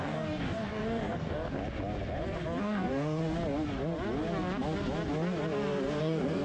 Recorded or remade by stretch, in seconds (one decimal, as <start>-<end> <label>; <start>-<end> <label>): 0.0-1.6 remade; 1.6-2.6 recorded; 2.6-3.2 remade; 3.2-6.0 recorded; 6.0-6.4 remade